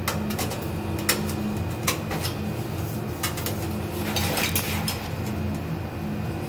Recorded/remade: recorded